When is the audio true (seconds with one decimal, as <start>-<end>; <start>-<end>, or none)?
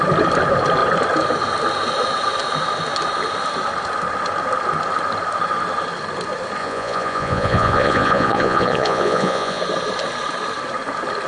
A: 0.0-6.6; 9.6-11.3